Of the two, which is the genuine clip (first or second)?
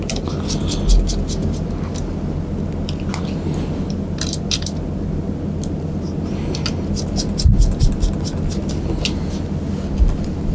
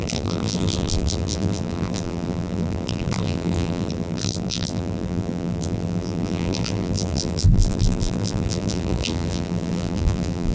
first